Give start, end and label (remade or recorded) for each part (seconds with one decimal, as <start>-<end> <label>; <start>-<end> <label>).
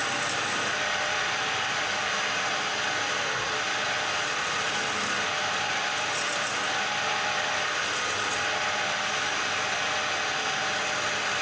0.0-11.4 recorded